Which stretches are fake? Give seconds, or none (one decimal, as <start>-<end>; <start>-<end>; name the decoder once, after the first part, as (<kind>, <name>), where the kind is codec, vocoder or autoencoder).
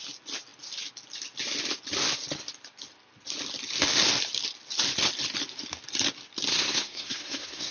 6.5-7.7 (codec, SNAC)